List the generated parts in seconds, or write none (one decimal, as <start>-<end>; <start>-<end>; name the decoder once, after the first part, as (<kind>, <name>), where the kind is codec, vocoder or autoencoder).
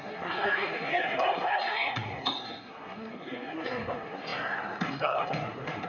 0.0-5.9 (codec, SNAC)